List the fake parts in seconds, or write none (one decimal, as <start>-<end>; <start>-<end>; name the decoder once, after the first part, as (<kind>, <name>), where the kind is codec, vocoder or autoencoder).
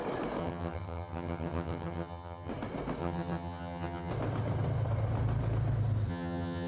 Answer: 0.4-2.5 (vocoder, HiFi-GAN); 3.0-4.1; 6.1-6.7